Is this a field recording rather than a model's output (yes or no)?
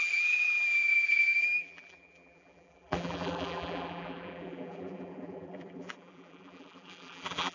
no